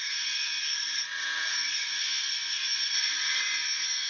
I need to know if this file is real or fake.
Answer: real